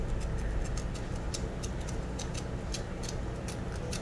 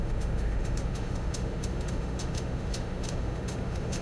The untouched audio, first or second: first